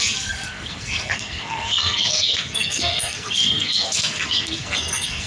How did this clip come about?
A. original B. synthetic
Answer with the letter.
B